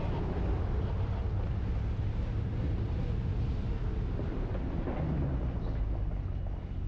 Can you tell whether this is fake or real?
real